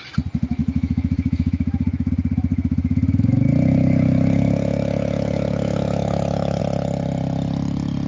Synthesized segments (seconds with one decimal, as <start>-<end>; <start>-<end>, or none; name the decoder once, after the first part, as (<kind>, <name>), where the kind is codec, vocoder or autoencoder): 0.6-2.1 (autoencoder, DAC-VAE); 2.5-6.6